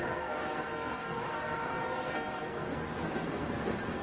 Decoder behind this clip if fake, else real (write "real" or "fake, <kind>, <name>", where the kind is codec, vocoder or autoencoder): fake, codec, SNAC